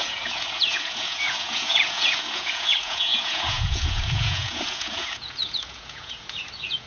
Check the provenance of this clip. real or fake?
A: fake